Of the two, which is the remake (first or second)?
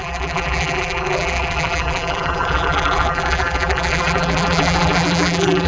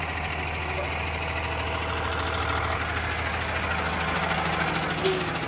first